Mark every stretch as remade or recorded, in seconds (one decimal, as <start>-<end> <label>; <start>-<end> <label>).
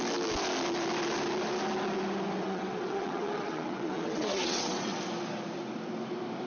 0.0-2.4 recorded; 2.4-5.0 remade; 5.0-6.5 recorded